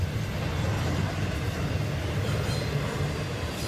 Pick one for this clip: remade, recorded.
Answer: recorded